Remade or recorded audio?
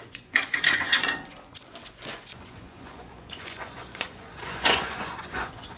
remade